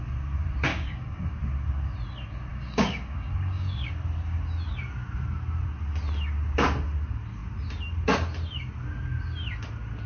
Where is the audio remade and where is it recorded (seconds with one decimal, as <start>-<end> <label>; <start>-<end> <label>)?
0.0-0.7 recorded; 0.7-1.4 remade; 1.4-2.5 recorded; 2.5-3.9 remade; 3.9-10.1 recorded